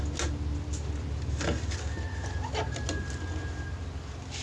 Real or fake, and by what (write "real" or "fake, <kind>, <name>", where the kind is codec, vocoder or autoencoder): real